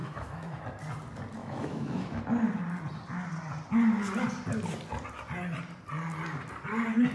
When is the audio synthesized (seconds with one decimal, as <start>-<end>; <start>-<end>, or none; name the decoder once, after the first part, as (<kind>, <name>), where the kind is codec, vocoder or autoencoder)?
0.0-0.6 (autoencoder, DAC-VAE); 1.4-2.2